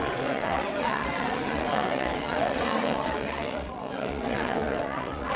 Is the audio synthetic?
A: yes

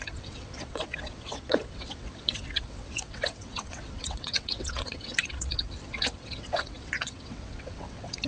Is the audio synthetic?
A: yes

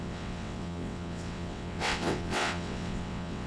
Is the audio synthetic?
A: yes